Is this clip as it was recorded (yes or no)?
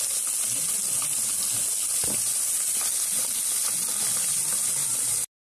yes